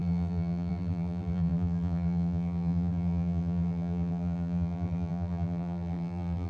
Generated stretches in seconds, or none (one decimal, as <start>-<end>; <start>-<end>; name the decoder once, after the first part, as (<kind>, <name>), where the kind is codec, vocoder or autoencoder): 0.0-6.5 (vocoder, BigVGAN v2)